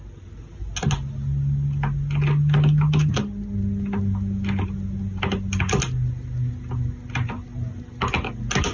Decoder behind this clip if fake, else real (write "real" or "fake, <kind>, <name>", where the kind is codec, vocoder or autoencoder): real